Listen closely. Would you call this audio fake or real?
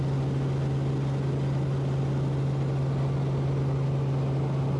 real